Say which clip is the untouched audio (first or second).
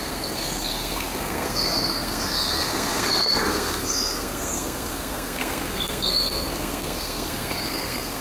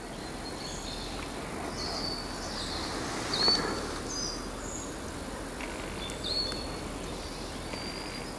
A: second